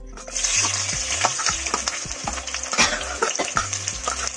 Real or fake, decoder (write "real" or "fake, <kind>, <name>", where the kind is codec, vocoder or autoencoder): real